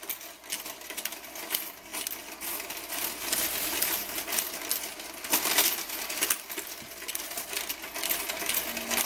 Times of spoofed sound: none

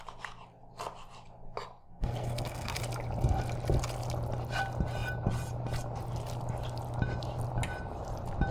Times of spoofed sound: 1.8-2.8

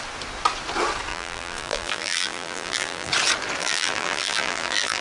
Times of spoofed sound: 1.1-3.1; 3.6-5.0

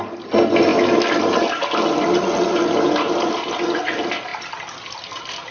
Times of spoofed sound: none

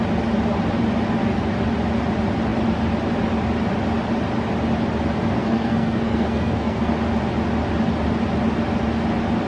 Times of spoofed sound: 5.4-6.9

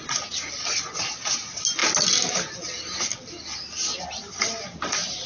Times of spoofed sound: none

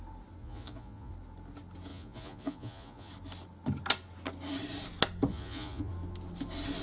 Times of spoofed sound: 0.4-1.1; 1.9-3.1; 5.3-5.9